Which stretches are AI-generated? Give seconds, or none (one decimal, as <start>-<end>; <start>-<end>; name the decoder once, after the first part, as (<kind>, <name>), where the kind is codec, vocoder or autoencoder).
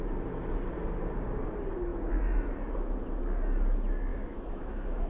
4.1-5.1 (autoencoder, DAC-VAE)